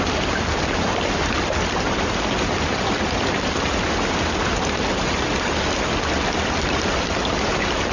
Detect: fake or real real